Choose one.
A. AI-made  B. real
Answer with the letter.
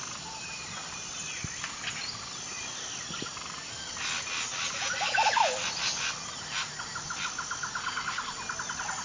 B